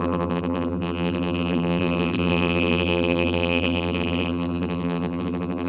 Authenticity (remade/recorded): remade